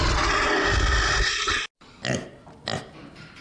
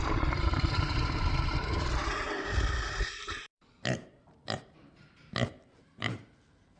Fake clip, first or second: second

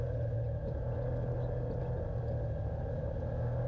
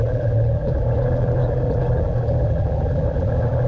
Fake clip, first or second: second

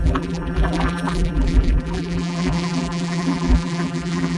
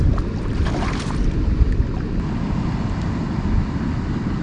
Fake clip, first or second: first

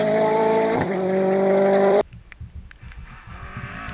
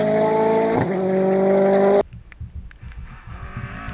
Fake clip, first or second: first